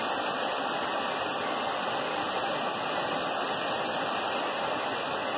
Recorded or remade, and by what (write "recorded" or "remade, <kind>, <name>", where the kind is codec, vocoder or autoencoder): recorded